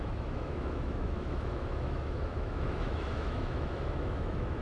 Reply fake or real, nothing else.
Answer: fake